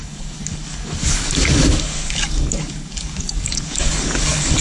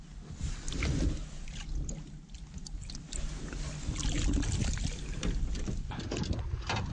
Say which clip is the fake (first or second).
first